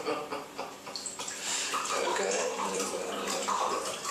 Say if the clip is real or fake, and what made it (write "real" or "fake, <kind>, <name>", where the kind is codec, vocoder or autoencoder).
fake, vocoder, BigVGAN v2